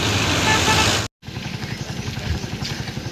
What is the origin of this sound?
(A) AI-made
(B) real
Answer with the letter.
B